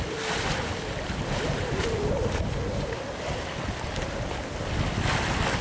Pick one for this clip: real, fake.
real